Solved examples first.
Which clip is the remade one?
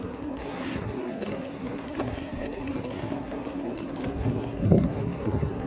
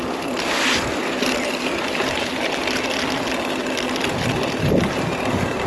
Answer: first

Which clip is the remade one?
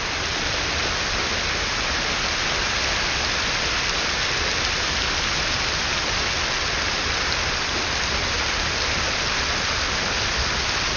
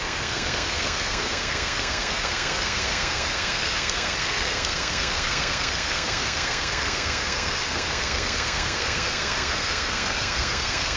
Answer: second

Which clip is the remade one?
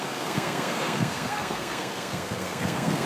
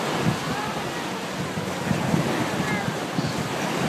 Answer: first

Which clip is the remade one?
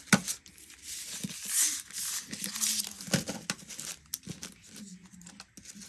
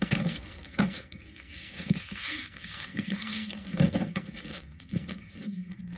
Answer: second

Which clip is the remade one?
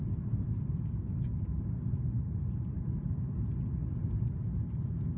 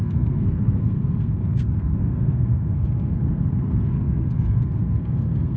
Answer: second